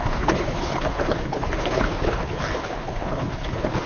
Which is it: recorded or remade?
remade